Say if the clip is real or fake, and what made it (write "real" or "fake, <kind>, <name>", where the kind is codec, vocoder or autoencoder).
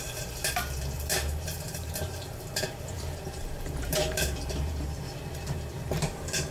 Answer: fake, vocoder, BigVGAN v2